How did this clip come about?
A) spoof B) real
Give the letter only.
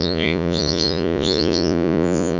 A